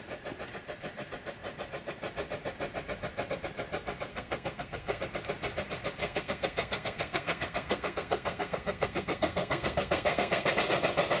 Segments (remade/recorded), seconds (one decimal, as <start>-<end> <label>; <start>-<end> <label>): 0.0-4.1 recorded; 4.1-5.0 remade; 5.0-6.0 recorded; 6.0-10.5 remade; 10.5-11.2 recorded